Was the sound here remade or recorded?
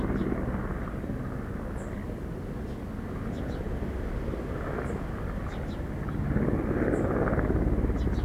recorded